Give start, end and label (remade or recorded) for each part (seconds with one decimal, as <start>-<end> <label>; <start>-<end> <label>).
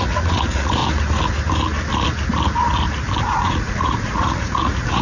0.0-0.8 remade; 0.8-3.2 recorded; 3.2-5.0 remade